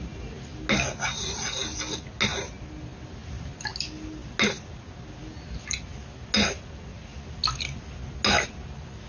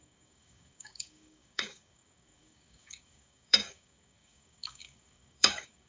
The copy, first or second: second